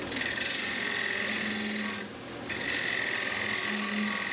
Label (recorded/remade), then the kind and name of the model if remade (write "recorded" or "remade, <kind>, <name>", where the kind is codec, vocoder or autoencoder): recorded